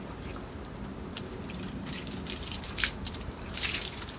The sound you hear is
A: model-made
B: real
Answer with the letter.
A